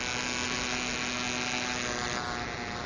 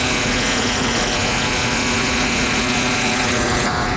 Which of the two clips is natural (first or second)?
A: first